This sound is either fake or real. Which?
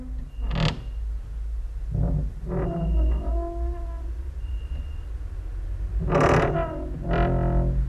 real